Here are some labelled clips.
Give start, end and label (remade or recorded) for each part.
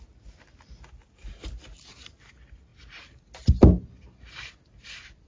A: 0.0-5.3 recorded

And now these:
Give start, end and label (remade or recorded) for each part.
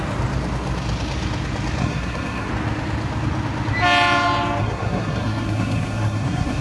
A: 0.0-1.8 recorded; 1.8-2.5 remade; 2.5-4.6 recorded; 4.6-6.6 remade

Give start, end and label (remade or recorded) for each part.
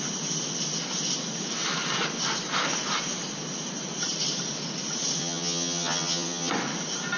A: 0.0-5.2 recorded; 5.2-6.5 remade; 6.5-7.2 recorded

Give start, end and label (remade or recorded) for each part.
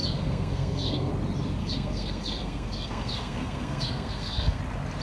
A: 0.0-1.1 remade; 1.1-1.6 recorded; 1.6-4.6 remade; 4.6-5.0 recorded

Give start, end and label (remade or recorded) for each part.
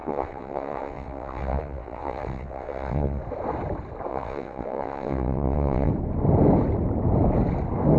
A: 0.0-3.2 remade; 3.2-4.1 recorded; 4.1-5.9 remade; 5.9-8.0 recorded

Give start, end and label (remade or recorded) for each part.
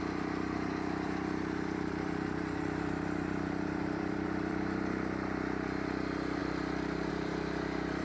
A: 0.0-8.0 remade